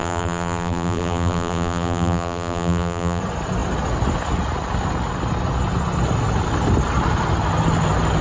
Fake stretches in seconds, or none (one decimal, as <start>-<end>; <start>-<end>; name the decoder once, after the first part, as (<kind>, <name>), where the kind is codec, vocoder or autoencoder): 0.0-3.2 (vocoder, BigVGAN v2)